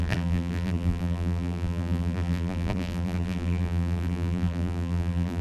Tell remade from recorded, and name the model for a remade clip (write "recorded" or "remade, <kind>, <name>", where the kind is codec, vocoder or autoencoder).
remade, vocoder, BigVGAN v2